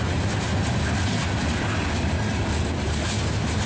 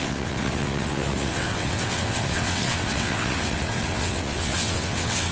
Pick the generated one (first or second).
second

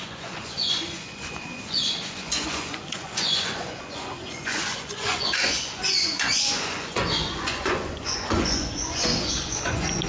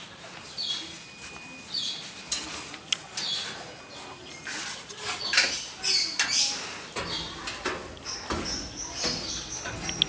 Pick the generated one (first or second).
first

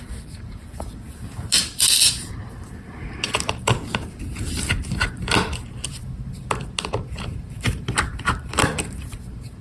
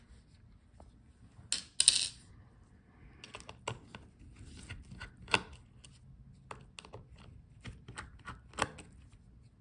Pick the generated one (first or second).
first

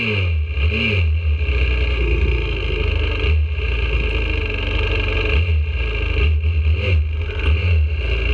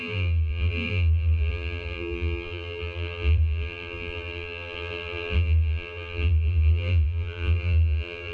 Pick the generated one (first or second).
second